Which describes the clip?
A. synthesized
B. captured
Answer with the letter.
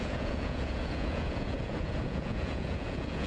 A